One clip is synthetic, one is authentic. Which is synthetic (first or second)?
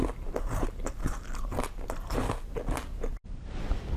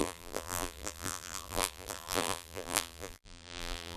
second